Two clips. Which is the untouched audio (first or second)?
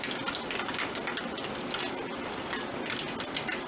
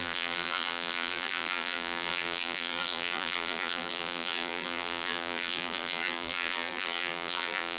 first